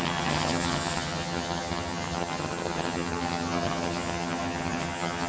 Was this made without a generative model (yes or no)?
no